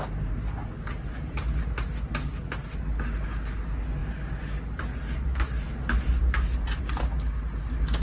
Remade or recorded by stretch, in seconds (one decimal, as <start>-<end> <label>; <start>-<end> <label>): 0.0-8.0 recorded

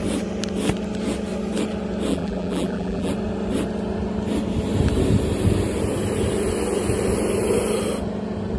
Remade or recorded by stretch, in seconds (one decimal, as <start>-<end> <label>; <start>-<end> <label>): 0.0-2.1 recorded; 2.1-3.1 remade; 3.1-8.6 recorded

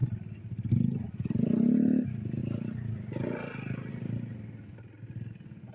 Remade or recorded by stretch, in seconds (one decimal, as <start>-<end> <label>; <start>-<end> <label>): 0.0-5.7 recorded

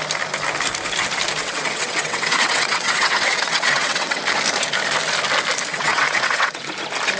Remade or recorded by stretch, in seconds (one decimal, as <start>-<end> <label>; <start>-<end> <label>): 0.0-1.4 recorded; 1.4-4.2 remade; 4.2-5.7 recorded; 5.7-6.7 remade; 6.7-7.2 recorded

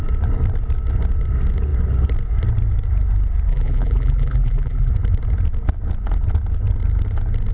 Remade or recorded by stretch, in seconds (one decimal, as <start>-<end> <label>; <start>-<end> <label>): 0.0-3.5 recorded; 3.5-4.9 remade; 4.9-7.5 recorded